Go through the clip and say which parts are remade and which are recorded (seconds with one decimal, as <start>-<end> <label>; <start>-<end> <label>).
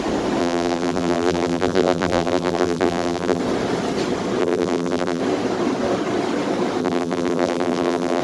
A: 0.0-0.4 recorded; 0.4-3.4 remade; 3.4-4.4 recorded; 4.4-5.2 remade; 5.2-6.8 recorded; 6.8-8.2 remade